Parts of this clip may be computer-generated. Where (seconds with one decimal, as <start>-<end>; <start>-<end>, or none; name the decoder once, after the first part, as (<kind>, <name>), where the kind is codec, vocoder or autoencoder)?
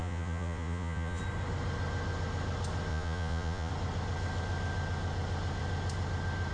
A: 0.0-1.2 (vocoder, Vocos); 2.9-3.7